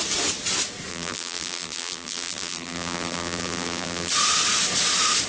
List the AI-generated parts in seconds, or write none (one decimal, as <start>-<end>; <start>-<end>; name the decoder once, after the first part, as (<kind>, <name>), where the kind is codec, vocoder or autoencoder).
0.9-4.1 (vocoder, BigVGAN v2)